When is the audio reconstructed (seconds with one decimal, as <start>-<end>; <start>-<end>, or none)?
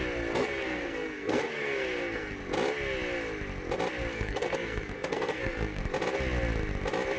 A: 0.4-2.4; 4.1-5.8